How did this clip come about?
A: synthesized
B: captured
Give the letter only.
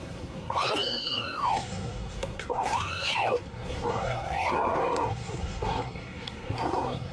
A